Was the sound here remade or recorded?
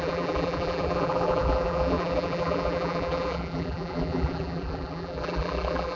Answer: remade